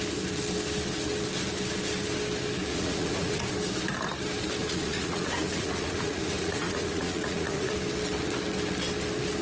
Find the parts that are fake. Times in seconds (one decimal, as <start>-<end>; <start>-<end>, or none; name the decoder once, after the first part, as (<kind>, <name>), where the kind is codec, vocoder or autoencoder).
2.7-3.4 (vocoder, Vocos); 4.6-7.7